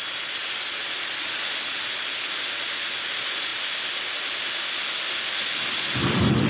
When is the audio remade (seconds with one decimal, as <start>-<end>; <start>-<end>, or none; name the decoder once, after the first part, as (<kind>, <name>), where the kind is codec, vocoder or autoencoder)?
none